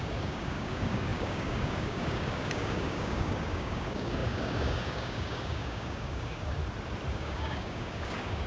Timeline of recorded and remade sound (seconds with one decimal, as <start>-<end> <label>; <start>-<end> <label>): 0.0-6.6 remade; 6.6-7.1 recorded; 7.1-8.5 remade